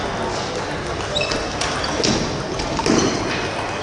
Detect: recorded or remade recorded